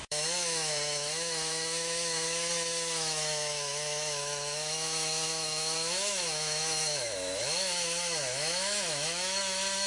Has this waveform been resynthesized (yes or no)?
yes